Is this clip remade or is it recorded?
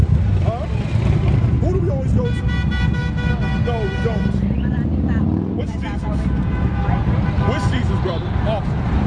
recorded